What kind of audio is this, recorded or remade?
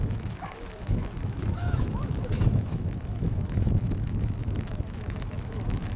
remade